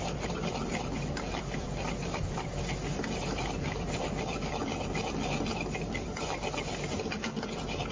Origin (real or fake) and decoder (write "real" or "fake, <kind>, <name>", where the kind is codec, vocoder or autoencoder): real